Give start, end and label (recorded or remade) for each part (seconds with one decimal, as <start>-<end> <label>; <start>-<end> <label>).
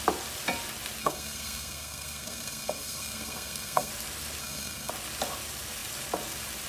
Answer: 0.0-1.0 recorded; 1.0-3.9 remade; 3.9-4.4 recorded; 4.4-4.9 remade; 4.9-6.7 recorded